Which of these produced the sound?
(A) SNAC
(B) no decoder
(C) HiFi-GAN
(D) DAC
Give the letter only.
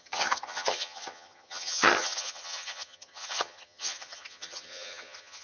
C